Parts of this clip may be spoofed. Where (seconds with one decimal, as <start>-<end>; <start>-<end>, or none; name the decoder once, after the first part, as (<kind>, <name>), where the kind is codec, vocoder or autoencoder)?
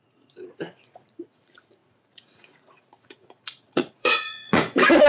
0.0-5.1 (vocoder, Vocos)